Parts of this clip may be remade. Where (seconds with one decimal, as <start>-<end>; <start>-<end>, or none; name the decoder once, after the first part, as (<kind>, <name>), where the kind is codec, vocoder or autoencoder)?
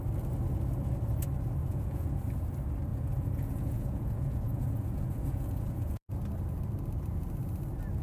1.6-2.2 (vocoder, Vocos); 2.9-6.1